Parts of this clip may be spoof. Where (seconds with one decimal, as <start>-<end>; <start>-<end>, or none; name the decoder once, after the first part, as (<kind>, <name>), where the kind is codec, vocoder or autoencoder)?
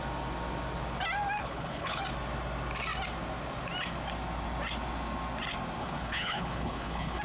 1.4-2.0 (codec, HILCodec); 5.8-7.2